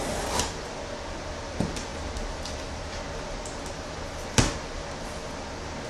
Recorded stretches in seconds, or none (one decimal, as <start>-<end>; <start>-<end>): 0.0-5.9

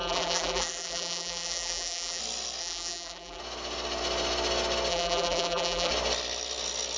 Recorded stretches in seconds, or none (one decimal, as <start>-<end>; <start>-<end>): 2.2-2.6; 3.4-4.9; 5.9-7.0

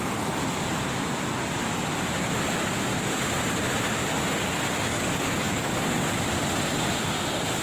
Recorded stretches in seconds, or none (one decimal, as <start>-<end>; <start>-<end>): 0.0-4.9; 5.7-7.6

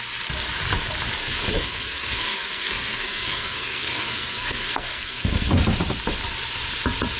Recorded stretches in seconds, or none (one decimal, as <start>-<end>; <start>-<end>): 0.0-1.2; 5.5-7.2